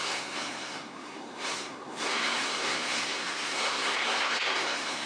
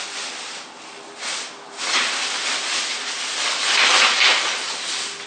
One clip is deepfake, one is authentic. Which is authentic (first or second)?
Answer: second